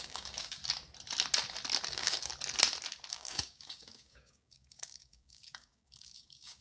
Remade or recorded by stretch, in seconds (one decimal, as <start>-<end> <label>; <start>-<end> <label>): 0.0-0.6 remade; 0.6-1.9 recorded; 1.9-2.3 remade; 2.3-3.1 recorded; 3.1-6.6 remade